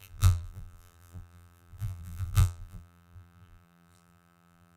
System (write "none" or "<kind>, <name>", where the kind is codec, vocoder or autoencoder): vocoder, BigVGAN v2